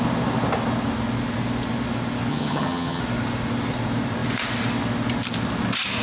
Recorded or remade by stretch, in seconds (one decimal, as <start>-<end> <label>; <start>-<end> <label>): 0.0-2.3 recorded; 2.3-3.0 remade; 3.0-6.0 recorded